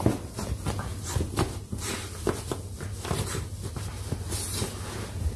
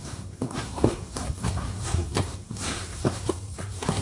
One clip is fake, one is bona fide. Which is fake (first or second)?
second